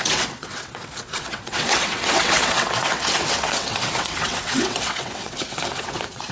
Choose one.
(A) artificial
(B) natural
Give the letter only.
A